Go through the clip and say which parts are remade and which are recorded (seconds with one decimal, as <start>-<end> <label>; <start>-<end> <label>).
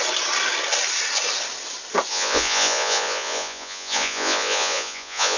0.0-2.1 recorded; 2.1-5.4 remade